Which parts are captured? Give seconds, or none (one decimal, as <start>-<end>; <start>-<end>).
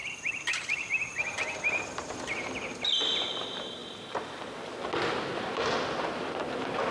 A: 1.1-3.4; 3.8-6.9